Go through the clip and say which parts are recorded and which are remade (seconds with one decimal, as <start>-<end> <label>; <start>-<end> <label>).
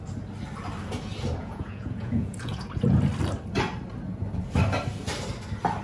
0.0-1.4 recorded; 1.4-3.0 remade; 3.0-5.8 recorded